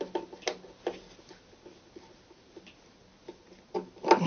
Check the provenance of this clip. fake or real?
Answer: real